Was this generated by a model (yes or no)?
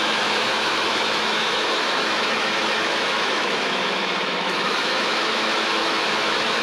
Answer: yes